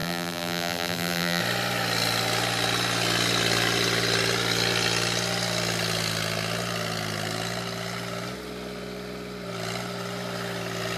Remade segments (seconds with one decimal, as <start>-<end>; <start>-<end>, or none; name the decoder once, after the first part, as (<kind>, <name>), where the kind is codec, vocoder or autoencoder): 0.0-1.4 (vocoder, BigVGAN v2)